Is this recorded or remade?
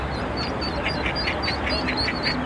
recorded